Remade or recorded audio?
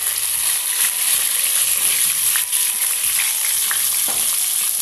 recorded